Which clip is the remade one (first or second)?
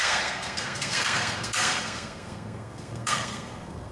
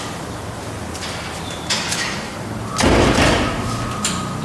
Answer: first